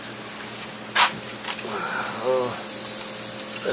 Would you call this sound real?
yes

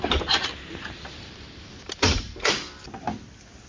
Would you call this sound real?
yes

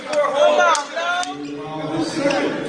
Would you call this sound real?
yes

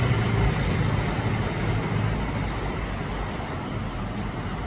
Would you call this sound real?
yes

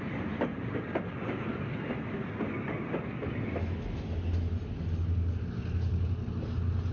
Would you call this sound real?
yes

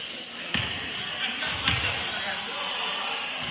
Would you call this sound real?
yes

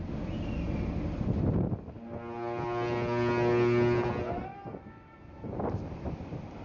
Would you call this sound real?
yes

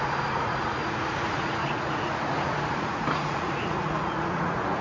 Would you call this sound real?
no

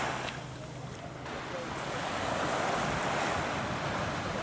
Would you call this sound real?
yes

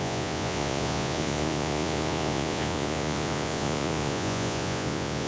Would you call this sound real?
no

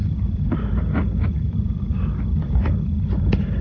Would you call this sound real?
yes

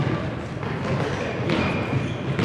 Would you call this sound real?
yes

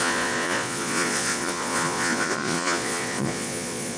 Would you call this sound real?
no